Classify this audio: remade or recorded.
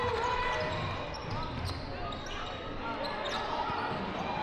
recorded